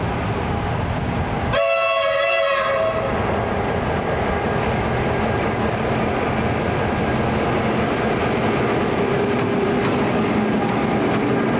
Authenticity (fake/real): real